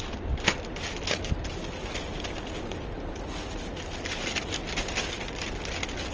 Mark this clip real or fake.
real